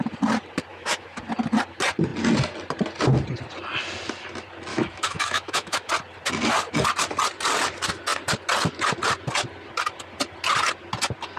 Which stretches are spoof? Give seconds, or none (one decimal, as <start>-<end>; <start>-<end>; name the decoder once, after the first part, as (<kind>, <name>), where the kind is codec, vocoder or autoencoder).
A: 0.7-1.2 (autoencoder, DAC-VAE); 4.7-5.9